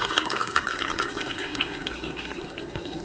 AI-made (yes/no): yes